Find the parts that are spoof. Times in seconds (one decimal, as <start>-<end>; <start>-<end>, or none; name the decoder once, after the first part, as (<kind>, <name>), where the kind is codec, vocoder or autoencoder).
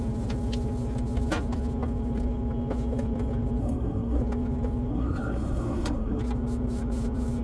3.6-4.2 (codec, SNAC); 4.9-6.2